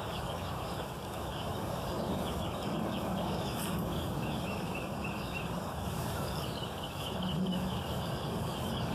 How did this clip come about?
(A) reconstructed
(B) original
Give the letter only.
A